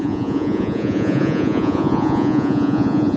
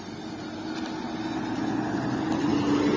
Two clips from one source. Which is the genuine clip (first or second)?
second